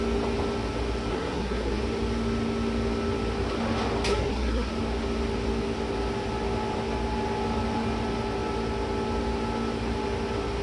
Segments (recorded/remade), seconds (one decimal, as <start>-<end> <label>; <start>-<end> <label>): 0.0-1.1 recorded; 1.1-1.8 remade; 1.8-4.1 recorded; 4.1-4.7 remade; 4.7-10.6 recorded